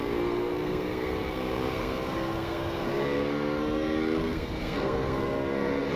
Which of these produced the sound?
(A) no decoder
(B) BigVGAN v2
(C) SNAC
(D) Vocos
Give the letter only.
C